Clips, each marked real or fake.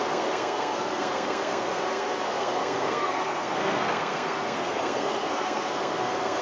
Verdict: fake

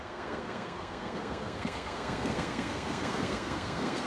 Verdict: fake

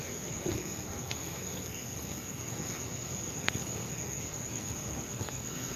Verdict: fake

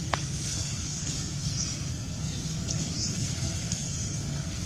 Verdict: fake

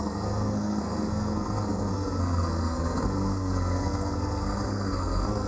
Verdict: fake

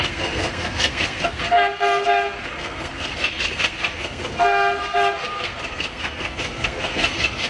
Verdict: fake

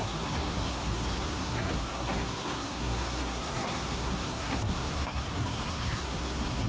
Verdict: fake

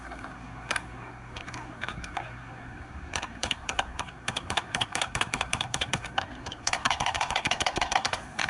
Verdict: fake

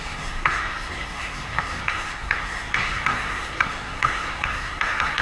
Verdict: fake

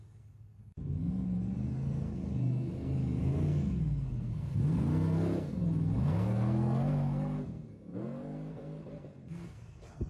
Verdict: fake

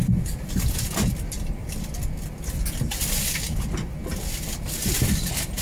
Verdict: real